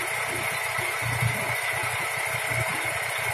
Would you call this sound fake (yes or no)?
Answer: no